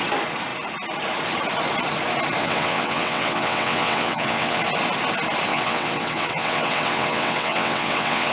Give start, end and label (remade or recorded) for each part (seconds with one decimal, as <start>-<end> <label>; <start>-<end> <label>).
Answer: 0.0-2.4 recorded; 2.4-4.6 remade; 4.6-5.5 recorded; 5.5-8.3 remade